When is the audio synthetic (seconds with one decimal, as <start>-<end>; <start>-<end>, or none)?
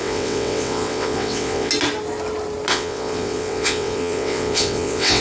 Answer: 0.0-1.7; 2.7-5.2